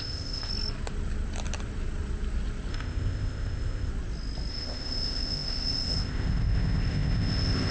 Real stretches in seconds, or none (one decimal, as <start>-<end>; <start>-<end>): 0.5-2.7; 3.9-4.5